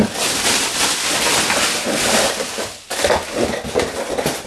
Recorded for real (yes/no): yes